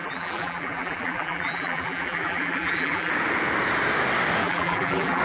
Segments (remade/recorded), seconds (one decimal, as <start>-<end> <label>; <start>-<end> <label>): 0.0-3.1 remade; 3.1-4.4 recorded; 4.4-5.2 remade